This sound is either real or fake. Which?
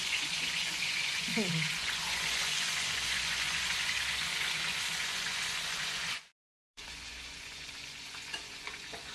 fake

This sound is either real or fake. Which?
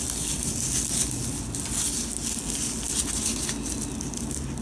real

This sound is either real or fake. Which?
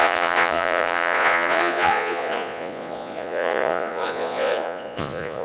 fake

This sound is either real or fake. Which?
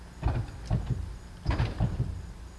real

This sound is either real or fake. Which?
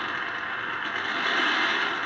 real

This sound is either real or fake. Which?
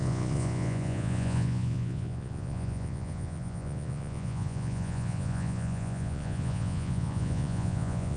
fake